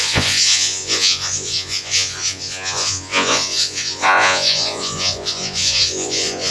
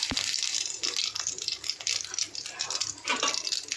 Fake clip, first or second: first